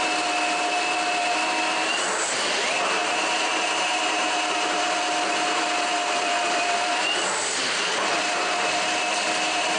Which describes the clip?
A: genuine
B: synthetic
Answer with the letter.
A